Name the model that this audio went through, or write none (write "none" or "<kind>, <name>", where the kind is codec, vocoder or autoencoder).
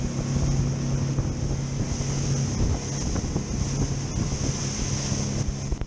none